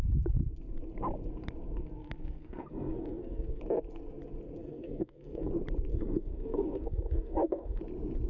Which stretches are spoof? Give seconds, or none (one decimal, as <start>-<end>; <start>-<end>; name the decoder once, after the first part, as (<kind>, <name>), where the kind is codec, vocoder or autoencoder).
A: 2.0-3.6 (codec, SNAC); 4.6-5.5; 5.9-7.8